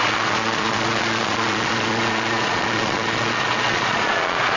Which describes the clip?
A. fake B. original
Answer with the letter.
A